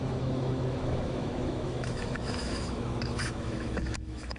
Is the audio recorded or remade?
remade